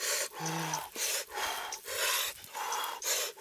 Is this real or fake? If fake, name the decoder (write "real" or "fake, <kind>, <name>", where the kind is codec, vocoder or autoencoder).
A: real